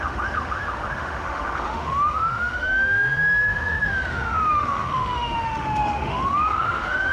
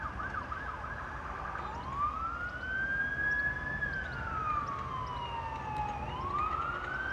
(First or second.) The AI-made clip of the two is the first